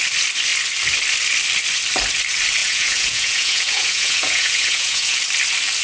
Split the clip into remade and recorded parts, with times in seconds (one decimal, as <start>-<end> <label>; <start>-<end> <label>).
0.0-2.6 recorded; 2.6-5.2 remade; 5.2-5.8 recorded

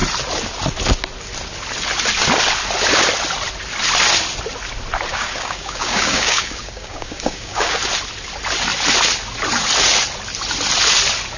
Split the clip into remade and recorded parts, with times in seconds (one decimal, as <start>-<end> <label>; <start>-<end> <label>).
0.0-5.1 recorded; 5.1-7.8 remade; 7.8-11.4 recorded